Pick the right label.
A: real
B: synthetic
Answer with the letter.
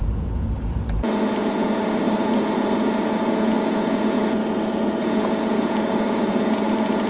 B